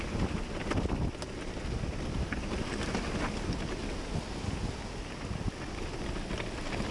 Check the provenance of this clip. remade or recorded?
recorded